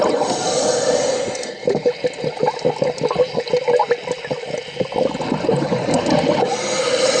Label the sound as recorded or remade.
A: recorded